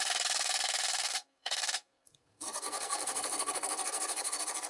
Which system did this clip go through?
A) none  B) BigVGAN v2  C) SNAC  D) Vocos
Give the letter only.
C